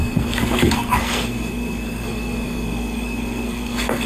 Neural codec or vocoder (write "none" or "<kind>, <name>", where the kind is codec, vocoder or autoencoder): codec, SNAC